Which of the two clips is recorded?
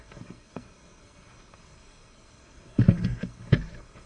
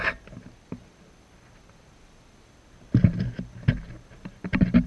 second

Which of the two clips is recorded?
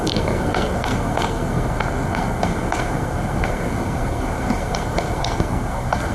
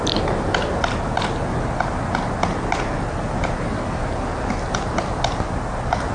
second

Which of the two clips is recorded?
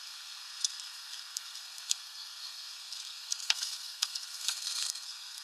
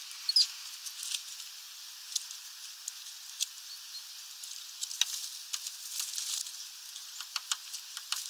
second